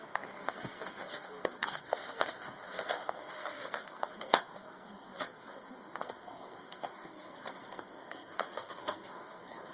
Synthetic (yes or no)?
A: yes